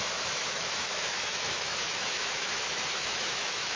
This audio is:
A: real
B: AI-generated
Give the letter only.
B